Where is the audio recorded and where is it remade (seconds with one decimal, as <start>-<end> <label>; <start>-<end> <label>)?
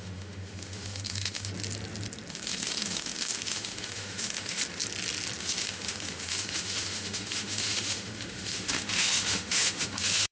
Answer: 0.0-1.5 remade; 1.5-2.3 recorded; 2.3-4.6 remade; 4.6-5.4 recorded; 5.4-10.3 remade